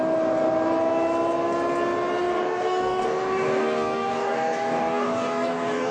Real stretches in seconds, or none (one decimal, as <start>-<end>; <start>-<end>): 0.0-2.2